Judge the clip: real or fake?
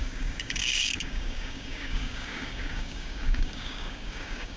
fake